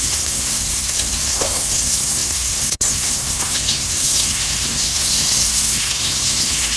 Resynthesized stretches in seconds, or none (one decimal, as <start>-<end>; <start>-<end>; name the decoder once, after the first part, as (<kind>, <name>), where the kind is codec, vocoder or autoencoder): 0.0-6.8 (codec, SNAC)